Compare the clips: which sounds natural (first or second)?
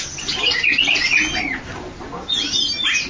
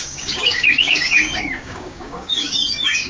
first